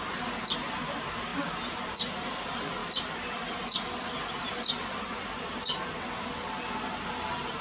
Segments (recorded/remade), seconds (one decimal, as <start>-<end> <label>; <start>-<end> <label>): 0.0-1.3 recorded; 1.3-2.3 remade; 2.3-2.8 recorded; 2.8-5.0 remade; 5.0-7.6 recorded